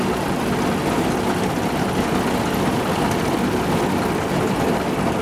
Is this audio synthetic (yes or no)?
no